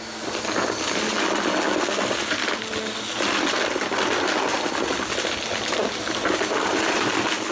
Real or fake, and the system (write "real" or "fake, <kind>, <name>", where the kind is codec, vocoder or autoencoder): real